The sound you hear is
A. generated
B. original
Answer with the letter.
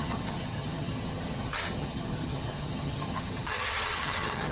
A